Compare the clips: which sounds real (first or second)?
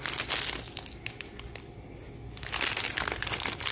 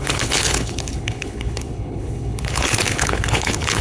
first